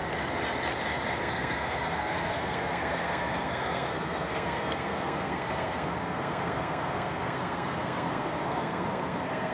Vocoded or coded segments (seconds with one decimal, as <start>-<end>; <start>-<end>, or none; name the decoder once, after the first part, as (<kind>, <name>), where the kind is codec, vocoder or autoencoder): 1.2-9.5 (codec, SNAC)

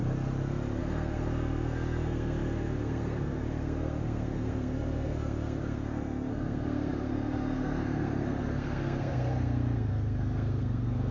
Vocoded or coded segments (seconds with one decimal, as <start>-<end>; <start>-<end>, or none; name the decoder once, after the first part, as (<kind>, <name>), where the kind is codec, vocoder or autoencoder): 0.8-11.1 (codec, SNAC)